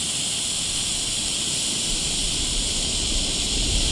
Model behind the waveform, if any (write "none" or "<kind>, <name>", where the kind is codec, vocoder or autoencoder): vocoder, BigVGAN v2